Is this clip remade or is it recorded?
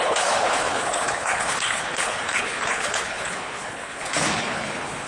remade